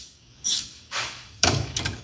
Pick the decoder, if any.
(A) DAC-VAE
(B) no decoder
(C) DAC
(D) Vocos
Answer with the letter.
C